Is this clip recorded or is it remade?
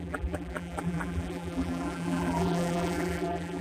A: remade